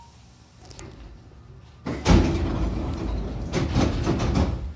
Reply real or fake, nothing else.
real